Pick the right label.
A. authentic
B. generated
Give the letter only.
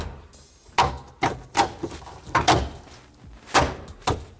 A